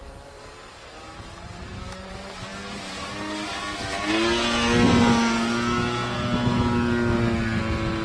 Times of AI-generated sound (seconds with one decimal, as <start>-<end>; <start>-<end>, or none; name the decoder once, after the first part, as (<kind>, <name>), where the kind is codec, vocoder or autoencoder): 0.0-2.1 (vocoder, BigVGAN v2)